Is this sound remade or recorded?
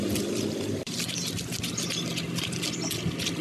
recorded